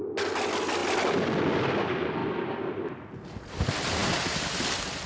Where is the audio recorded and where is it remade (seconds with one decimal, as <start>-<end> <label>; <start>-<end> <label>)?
0.0-5.1 recorded